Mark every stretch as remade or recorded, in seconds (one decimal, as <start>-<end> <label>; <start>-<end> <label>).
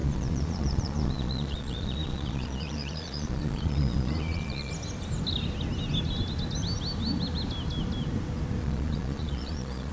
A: 0.0-4.7 remade; 4.7-8.6 recorded; 8.6-9.9 remade